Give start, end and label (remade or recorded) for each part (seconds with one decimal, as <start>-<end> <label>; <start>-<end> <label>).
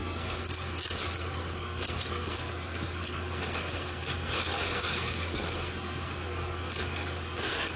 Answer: 0.0-7.8 remade